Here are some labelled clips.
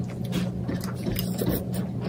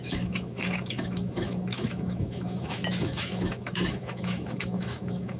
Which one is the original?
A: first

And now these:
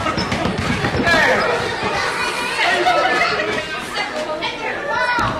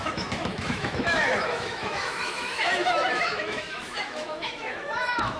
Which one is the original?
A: first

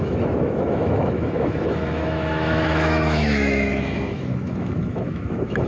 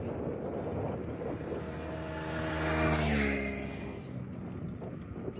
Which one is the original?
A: second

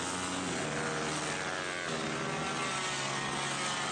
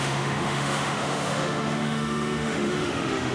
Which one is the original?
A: first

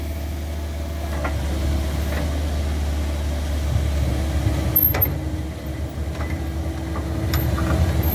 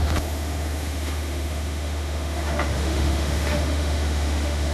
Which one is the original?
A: first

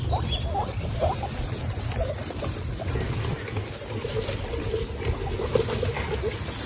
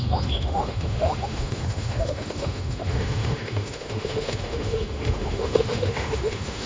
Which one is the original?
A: first